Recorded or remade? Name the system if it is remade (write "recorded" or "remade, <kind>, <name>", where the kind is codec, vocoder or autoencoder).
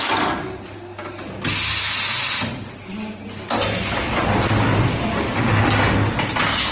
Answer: recorded